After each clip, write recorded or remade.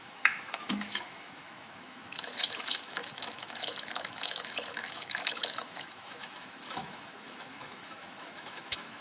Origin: remade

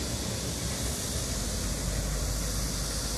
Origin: recorded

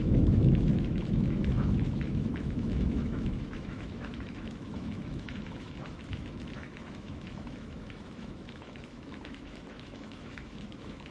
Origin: remade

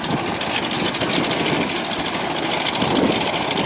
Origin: recorded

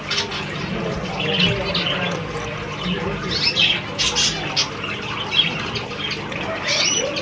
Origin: recorded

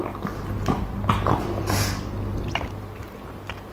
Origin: recorded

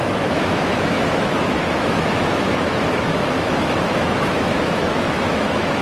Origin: remade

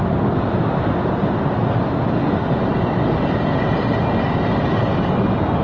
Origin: recorded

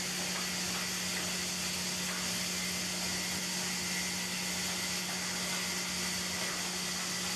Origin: recorded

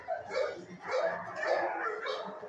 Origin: recorded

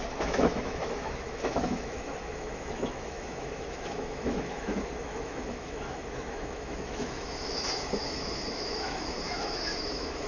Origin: remade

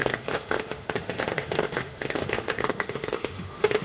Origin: remade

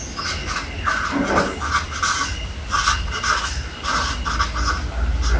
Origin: recorded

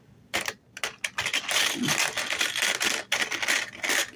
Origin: recorded